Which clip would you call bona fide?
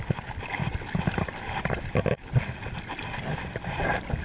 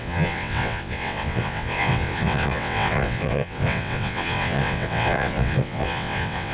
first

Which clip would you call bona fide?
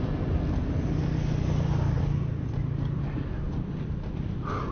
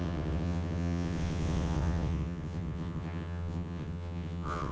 first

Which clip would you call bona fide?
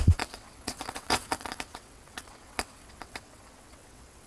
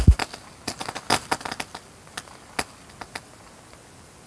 second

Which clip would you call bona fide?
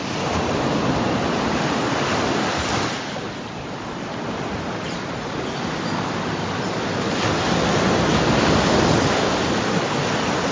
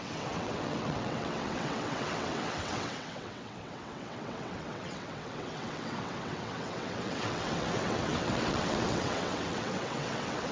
first